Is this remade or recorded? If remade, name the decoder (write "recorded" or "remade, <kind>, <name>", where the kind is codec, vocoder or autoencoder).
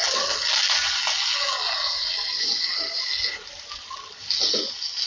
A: recorded